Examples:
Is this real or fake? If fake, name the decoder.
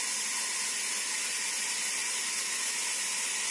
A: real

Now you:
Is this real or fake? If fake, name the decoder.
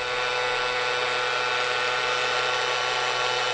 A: real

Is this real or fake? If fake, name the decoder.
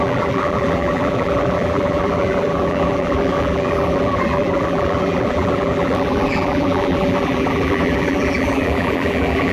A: fake, vocoder, BigVGAN v2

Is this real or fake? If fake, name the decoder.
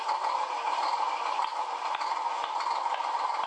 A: real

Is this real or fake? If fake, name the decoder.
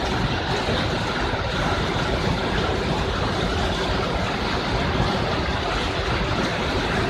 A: real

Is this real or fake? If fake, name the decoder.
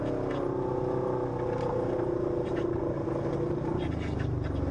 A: real